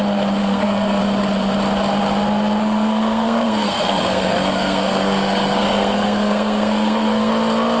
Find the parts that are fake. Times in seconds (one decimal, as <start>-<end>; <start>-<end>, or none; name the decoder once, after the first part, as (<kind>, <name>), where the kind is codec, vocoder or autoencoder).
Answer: 0.4-1.0 (codec, SNAC); 2.6-7.3